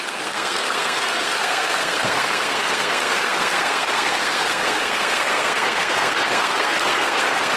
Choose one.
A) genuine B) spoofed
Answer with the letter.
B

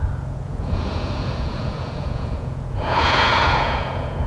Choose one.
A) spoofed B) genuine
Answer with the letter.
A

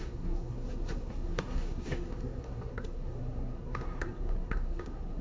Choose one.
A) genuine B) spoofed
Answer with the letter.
B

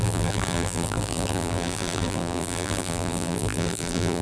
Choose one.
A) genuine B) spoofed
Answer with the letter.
B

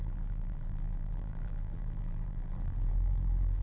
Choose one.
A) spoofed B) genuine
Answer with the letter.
A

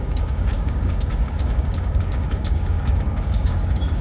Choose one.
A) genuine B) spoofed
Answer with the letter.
B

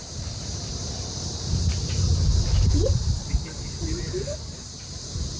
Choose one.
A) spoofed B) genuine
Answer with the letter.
A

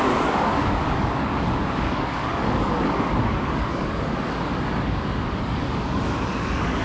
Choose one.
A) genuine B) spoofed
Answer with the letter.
B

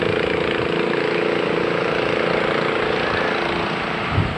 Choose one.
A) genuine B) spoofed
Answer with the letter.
A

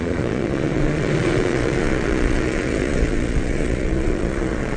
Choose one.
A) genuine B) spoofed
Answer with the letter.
B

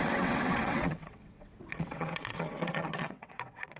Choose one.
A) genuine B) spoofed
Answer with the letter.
B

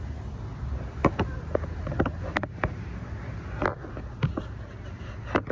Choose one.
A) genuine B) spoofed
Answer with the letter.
A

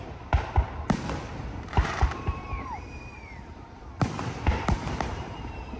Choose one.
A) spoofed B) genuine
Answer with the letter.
A